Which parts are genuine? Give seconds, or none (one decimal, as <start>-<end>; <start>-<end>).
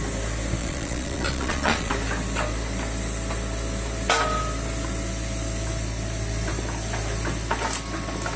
0.0-0.6; 1.9-8.4